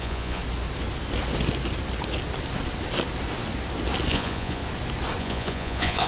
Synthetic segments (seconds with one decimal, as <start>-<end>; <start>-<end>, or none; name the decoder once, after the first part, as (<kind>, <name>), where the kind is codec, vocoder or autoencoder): 0.0-0.4 (vocoder, Vocos); 4.1-4.6; 5.2-6.1